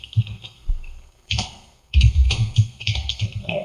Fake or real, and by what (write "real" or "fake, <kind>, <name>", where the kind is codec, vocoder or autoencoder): fake, codec, SNAC